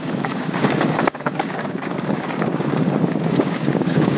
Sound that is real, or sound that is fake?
fake